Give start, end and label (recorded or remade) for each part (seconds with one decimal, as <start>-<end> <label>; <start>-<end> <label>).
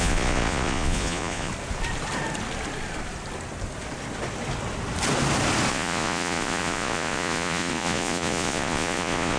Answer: 0.0-1.5 remade; 1.5-5.7 recorded; 5.7-9.4 remade